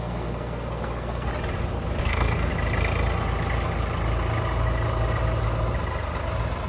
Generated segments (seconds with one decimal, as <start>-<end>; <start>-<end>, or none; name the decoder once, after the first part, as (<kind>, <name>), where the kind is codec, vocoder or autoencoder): 0.0-1.3 (codec, SNAC); 2.0-2.5